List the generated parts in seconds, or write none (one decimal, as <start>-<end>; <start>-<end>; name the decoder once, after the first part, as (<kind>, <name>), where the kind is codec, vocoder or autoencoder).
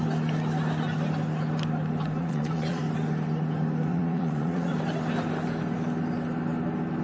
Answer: 2.2-2.8 (vocoder, Vocos); 3.9-4.7